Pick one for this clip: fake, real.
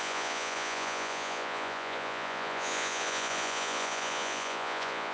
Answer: fake